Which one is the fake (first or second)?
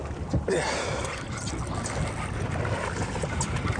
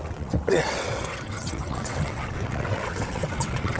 second